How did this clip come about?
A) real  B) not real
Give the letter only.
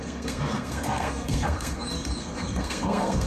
B